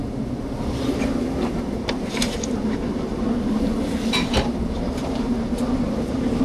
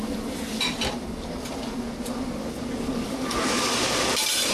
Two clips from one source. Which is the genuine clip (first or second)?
second